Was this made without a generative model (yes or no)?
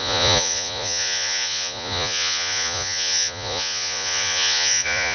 no